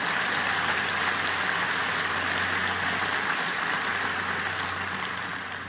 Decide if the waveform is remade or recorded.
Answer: recorded